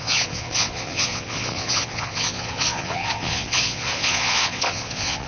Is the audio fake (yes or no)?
yes